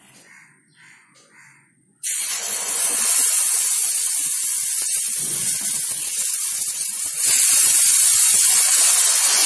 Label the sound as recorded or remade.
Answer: remade